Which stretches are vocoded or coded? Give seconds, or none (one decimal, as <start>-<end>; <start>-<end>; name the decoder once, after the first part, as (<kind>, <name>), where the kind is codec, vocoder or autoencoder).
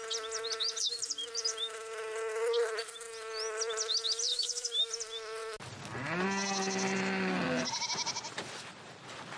4.3-4.9 (autoencoder, DAC-VAE)